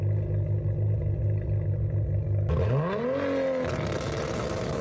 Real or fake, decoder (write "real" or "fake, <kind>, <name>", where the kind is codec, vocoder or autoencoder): real